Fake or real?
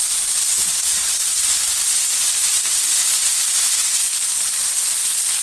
real